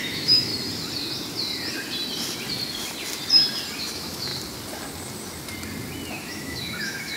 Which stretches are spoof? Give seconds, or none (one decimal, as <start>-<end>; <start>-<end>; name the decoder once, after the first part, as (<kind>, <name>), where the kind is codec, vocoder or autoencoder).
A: 0.0-0.5 (autoencoder, DAC-VAE); 3.8-4.3; 6.1-7.2